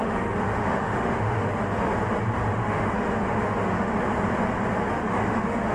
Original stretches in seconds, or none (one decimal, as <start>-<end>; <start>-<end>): 1.9-2.6; 3.9-4.9